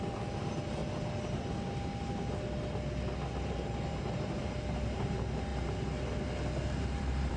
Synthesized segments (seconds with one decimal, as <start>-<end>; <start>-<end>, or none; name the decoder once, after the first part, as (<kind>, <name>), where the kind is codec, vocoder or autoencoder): 0.0-0.8 (vocoder, BigVGAN v2); 3.3-5.5; 6.7-7.4